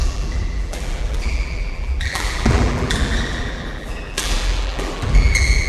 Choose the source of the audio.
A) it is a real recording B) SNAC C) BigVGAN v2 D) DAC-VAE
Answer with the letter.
C